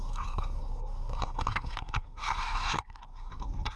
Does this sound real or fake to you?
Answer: fake